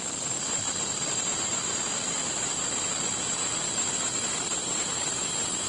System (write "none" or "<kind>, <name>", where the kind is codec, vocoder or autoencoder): none